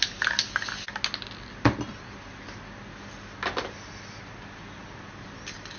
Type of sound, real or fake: real